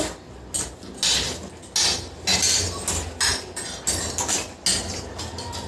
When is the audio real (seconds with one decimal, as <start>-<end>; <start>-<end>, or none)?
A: 0.0-5.7